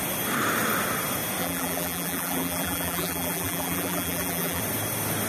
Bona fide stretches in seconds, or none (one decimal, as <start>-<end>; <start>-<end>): 0.0-1.4; 4.6-5.3